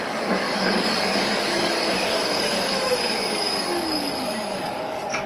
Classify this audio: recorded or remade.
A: remade